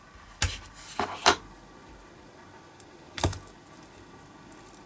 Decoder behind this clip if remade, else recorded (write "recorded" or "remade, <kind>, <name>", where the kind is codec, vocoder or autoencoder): recorded